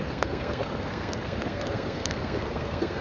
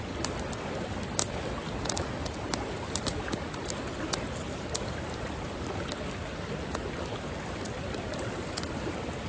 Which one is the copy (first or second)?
first